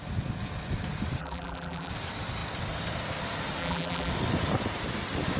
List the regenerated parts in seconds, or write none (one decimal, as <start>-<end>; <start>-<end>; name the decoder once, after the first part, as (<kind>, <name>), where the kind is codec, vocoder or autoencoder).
1.2-1.9 (vocoder, BigVGAN v2); 3.6-4.1

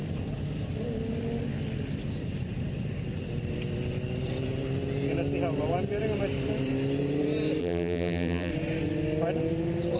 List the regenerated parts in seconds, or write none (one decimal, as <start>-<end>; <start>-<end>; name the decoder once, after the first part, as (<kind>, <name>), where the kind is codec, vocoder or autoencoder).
7.6-8.5 (vocoder, BigVGAN v2)

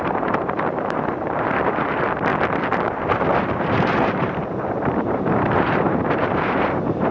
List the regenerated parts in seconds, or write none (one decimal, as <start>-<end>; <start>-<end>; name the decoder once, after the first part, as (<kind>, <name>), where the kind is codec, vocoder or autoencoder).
0.0-2.3 (vocoder, BigVGAN v2); 3.5-7.1